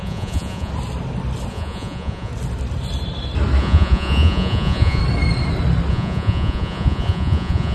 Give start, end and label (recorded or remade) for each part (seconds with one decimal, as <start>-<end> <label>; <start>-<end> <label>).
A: 0.0-0.7 remade; 0.7-1.5 recorded; 1.5-2.3 remade; 2.3-3.6 recorded; 3.6-5.0 remade; 5.0-5.9 recorded; 5.9-7.7 remade